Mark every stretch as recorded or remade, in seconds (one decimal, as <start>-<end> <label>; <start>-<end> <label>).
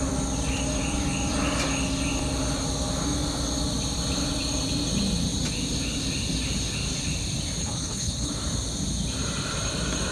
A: 0.0-7.6 recorded; 7.6-8.3 remade; 8.3-10.1 recorded